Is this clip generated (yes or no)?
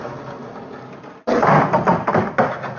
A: no